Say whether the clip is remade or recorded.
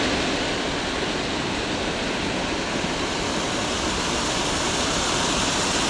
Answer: recorded